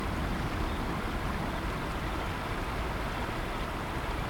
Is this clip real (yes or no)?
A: yes